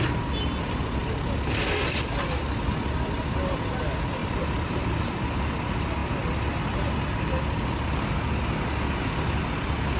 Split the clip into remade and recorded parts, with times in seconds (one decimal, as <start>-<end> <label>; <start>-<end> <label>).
0.0-4.2 recorded; 4.2-5.2 remade; 5.2-10.0 recorded